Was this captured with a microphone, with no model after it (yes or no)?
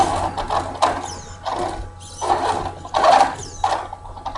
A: yes